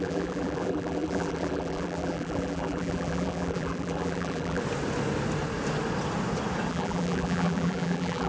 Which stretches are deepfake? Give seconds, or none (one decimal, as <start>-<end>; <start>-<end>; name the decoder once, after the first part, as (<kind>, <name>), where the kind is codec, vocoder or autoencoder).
0.0-4.6 (vocoder, BigVGAN v2); 6.7-8.3